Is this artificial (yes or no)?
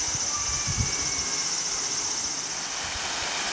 yes